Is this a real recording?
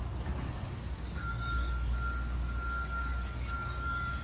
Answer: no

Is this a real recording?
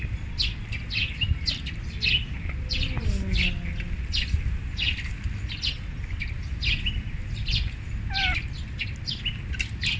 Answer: yes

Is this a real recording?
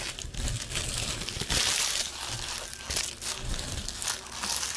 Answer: yes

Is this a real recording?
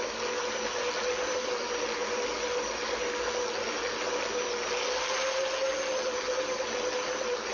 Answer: yes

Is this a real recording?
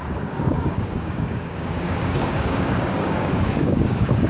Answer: no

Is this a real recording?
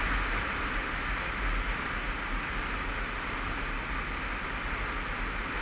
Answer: yes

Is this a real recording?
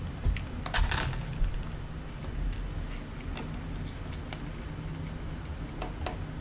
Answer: yes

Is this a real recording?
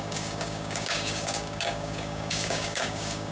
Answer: no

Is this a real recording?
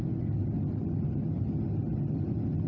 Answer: yes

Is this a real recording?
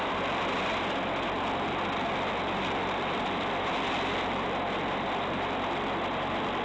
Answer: yes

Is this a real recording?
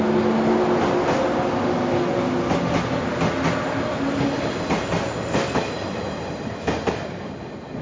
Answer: yes